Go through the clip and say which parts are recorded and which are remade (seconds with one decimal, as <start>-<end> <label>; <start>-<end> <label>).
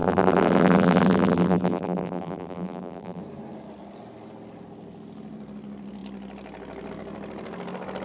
0.0-3.2 remade; 3.2-8.0 recorded